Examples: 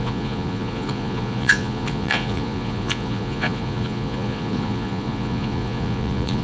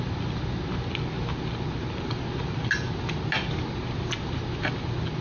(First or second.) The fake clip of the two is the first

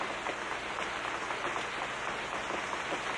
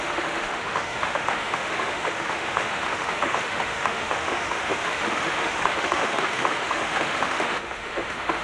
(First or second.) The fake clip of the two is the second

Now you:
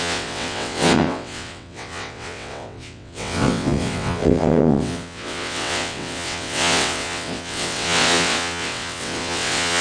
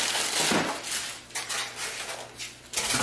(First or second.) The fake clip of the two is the first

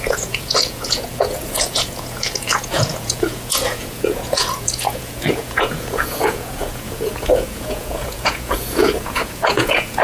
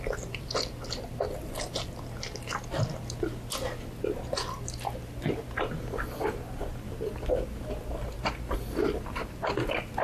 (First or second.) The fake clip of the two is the first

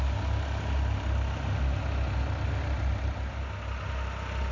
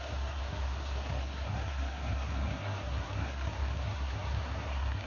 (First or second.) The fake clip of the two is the second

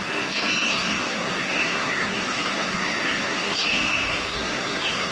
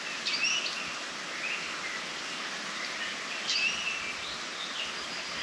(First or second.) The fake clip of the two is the first